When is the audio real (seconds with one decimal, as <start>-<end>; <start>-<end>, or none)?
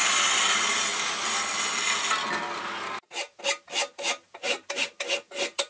0.0-5.7